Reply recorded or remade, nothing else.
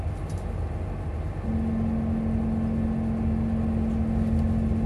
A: recorded